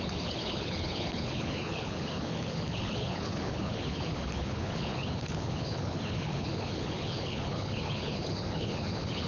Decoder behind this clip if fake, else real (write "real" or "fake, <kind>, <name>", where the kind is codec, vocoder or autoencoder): fake, codec, HILCodec